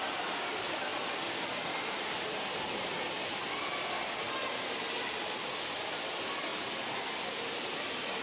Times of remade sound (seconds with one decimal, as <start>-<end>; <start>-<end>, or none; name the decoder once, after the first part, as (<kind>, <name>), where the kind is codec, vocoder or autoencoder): none

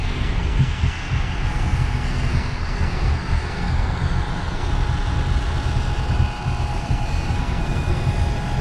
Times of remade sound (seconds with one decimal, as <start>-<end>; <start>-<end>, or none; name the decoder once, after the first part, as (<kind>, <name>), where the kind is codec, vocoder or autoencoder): 0.0-4.7 (codec, SNAC); 6.7-8.1

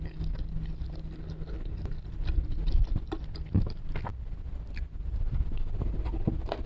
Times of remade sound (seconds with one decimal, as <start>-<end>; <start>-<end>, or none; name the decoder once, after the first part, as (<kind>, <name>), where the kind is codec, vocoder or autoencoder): none

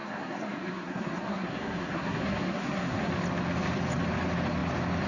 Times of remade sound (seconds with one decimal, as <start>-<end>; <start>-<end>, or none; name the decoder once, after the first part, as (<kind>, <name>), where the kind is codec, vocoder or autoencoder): 0.0-3.1 (codec, SNAC)

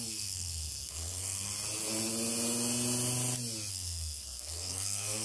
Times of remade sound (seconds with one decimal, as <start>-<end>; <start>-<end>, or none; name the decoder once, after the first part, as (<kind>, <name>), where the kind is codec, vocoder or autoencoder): 0.0-1.5 (codec, SNAC); 3.7-5.2

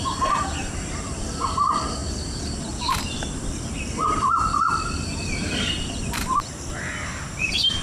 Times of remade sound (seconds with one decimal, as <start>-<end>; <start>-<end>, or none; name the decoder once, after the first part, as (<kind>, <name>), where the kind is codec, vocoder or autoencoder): 0.0-2.0 (vocoder, BigVGAN v2); 2.6-7.8